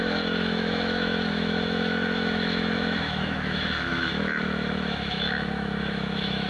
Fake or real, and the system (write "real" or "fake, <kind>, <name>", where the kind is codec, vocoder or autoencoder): fake, autoencoder, DAC-VAE